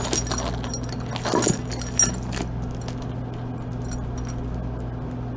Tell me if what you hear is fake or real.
real